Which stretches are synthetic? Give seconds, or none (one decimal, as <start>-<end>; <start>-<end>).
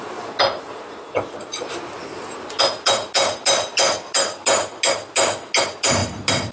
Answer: 0.7-2.6